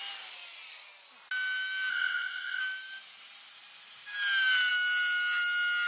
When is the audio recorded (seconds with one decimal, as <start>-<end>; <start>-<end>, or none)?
0.0-1.9; 2.6-5.9